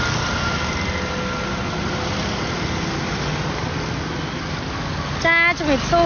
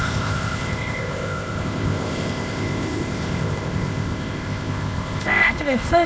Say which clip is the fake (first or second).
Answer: second